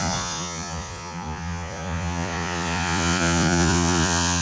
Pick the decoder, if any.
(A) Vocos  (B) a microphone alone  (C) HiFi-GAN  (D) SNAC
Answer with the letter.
A